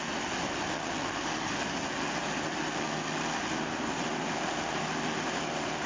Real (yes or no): yes